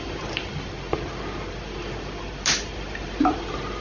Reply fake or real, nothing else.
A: real